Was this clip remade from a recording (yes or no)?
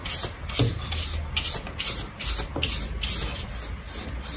no